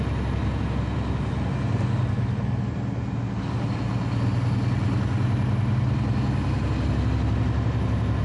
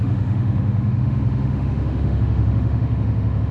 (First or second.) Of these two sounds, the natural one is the first